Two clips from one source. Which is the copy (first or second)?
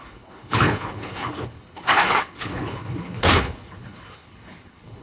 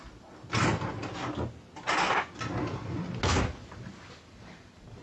first